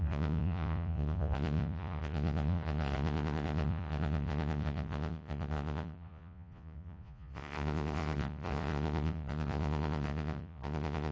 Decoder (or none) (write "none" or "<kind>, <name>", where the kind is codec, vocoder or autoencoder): vocoder, Vocos